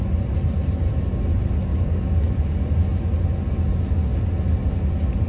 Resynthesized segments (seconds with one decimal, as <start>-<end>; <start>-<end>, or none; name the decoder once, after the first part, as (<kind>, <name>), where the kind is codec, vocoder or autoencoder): 1.7-2.7 (codec, DAC)